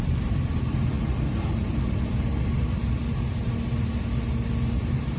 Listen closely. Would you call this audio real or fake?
real